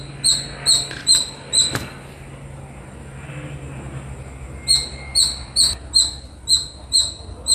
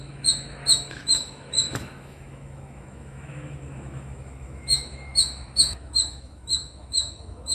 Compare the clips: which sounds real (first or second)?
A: first